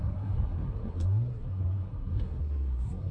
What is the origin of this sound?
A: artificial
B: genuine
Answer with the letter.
A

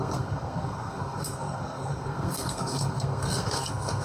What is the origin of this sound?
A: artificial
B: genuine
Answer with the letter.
A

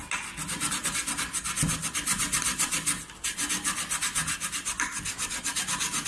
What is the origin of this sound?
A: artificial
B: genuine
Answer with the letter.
B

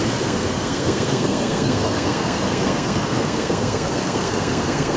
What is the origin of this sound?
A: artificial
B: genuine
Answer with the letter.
A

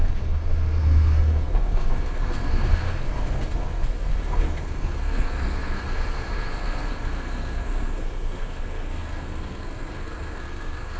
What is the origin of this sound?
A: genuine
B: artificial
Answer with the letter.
B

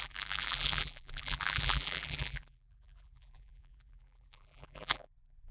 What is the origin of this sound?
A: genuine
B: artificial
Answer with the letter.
B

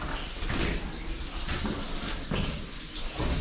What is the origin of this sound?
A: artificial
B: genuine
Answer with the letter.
B